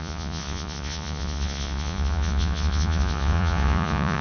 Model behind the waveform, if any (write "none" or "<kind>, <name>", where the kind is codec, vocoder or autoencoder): vocoder, Vocos